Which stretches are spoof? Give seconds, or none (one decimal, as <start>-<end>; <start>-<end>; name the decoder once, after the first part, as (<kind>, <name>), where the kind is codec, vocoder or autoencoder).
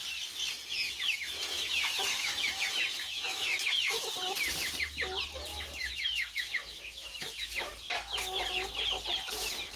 0.7-4.1 (autoencoder, DAC-VAE); 5.5-7.7